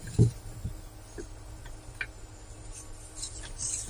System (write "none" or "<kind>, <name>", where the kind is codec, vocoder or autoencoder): none